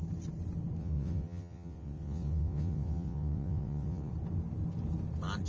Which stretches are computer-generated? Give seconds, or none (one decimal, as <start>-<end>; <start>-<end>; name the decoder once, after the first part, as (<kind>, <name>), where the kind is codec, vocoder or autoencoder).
0.8-4.1 (vocoder, WaveNeXt)